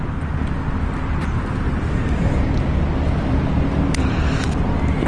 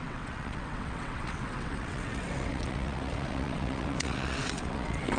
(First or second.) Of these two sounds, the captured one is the first